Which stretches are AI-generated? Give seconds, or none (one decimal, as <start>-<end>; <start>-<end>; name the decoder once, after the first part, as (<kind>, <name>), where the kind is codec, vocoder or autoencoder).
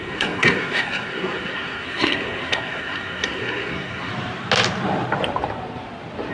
0.0-4.1 (codec, SNAC)